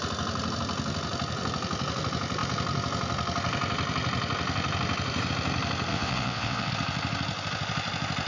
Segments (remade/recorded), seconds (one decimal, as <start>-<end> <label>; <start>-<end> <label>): 0.0-5.9 recorded; 5.9-6.7 remade; 6.7-8.3 recorded